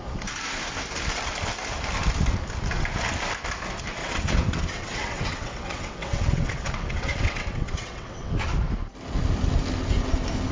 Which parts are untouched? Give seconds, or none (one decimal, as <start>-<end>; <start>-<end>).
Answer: 0.0-4.0; 8.3-10.5